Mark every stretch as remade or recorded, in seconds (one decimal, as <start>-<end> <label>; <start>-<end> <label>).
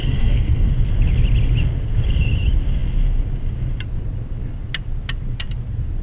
0.0-0.7 remade; 0.7-6.0 recorded